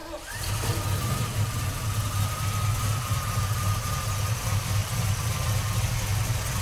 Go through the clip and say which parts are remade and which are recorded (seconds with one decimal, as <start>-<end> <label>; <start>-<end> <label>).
0.0-4.8 recorded; 4.8-5.5 remade; 5.5-6.6 recorded